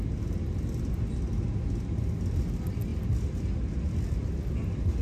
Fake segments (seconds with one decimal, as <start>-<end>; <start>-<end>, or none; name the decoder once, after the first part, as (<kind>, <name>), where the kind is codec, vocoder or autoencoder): none